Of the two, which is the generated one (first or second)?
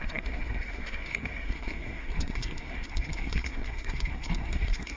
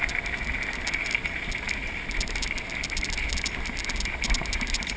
first